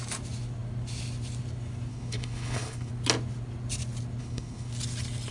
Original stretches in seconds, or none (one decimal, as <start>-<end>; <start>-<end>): 0.0-1.9; 2.9-4.2; 4.7-5.3